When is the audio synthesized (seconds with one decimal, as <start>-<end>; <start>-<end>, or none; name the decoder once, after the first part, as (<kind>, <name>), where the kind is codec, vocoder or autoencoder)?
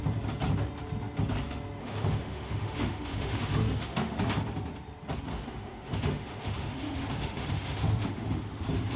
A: 1.8-4.2 (autoencoder, DAC-VAE); 5.3-8.6